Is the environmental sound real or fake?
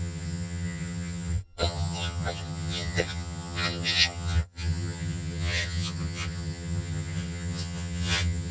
fake